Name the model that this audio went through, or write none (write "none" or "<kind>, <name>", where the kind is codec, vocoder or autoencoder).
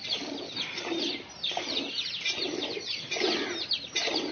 none